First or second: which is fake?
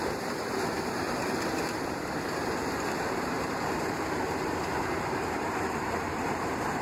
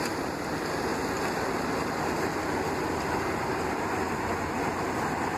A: first